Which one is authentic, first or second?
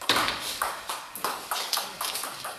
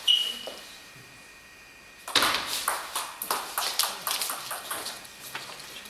second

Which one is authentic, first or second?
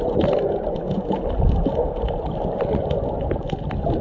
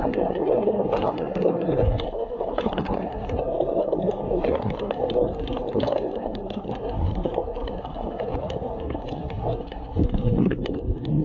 first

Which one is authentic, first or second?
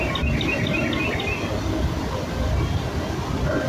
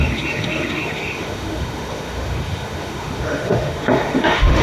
first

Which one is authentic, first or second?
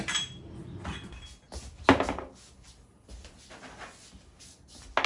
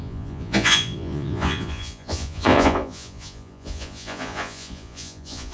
first